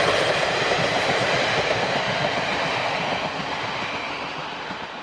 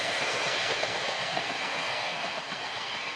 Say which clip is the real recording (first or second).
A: first